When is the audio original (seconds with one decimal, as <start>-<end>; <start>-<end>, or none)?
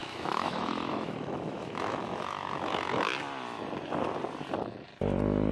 3.2-5.5